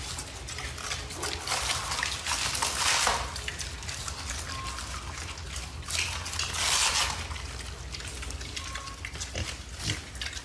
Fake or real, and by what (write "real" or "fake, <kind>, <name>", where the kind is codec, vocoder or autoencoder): real